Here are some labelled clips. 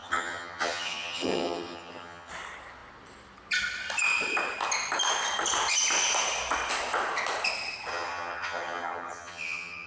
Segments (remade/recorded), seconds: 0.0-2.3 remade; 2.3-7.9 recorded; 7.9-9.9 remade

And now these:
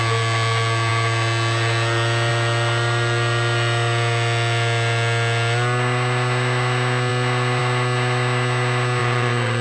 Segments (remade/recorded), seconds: 0.0-9.0 recorded; 9.0-9.6 remade

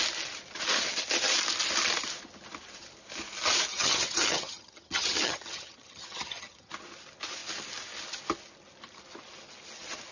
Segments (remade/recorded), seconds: 0.0-3.7 recorded; 3.7-6.7 remade; 6.7-10.1 recorded

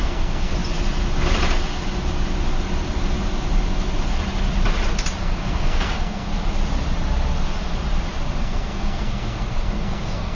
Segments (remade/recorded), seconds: 0.0-0.5 remade; 0.5-5.2 recorded; 5.2-6.3 remade; 6.3-8.4 recorded; 8.4-10.3 remade

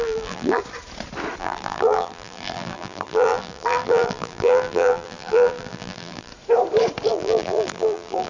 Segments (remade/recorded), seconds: 0.0-0.6 remade; 0.6-1.4 recorded; 1.4-6.3 remade; 6.3-7.1 recorded; 7.1-8.3 remade

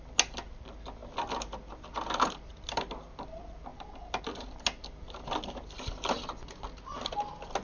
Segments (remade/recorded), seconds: 0.0-7.6 recorded

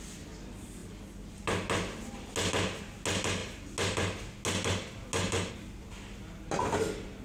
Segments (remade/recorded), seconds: 0.0-7.2 recorded